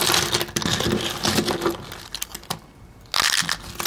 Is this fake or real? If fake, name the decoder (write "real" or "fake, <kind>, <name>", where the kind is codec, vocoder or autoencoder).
real